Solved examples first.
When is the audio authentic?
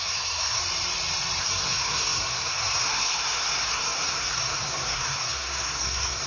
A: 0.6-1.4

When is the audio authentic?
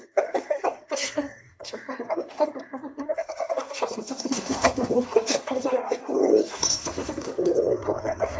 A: none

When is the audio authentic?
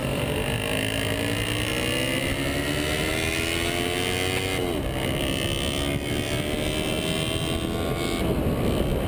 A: 0.0-9.1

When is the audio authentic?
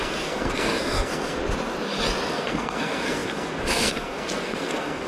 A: 1.4-2.3